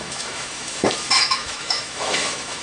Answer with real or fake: fake